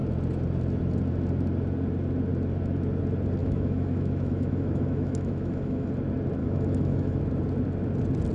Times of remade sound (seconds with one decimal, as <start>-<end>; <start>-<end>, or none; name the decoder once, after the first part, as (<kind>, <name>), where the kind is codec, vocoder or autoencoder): 3.4-5.9 (autoencoder, DAC-VAE); 6.4-7.2